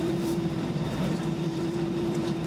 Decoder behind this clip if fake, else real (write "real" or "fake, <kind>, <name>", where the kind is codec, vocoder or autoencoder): fake, vocoder, BigVGAN v2